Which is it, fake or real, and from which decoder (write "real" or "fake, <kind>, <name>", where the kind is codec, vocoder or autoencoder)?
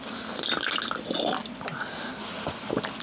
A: real